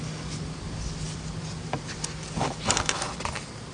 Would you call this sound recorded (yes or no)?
yes